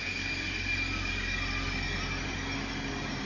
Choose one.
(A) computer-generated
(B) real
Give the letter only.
B